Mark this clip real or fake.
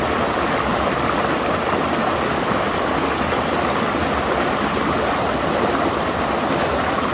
real